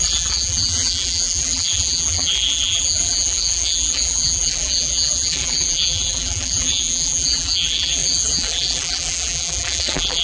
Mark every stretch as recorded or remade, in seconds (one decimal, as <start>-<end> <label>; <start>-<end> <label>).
0.0-10.2 remade